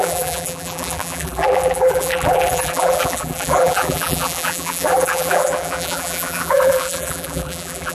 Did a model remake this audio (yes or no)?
yes